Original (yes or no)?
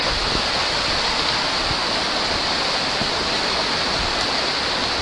yes